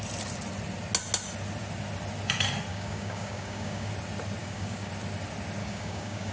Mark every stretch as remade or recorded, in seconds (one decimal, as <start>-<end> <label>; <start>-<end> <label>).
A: 0.0-2.7 recorded; 2.7-3.9 remade; 3.9-4.4 recorded; 4.4-4.9 remade; 4.9-5.6 recorded; 5.6-6.3 remade